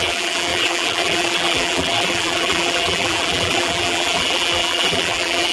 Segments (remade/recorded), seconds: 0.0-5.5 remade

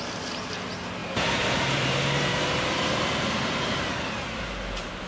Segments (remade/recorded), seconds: 0.0-1.0 recorded; 1.0-4.1 remade; 4.1-5.1 recorded